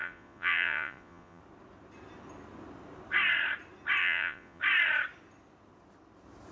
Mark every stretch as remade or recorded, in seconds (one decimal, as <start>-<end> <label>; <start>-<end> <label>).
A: 0.0-1.4 remade; 1.4-4.0 recorded; 4.0-4.6 remade; 4.6-6.5 recorded